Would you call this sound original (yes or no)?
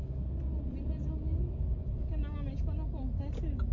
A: yes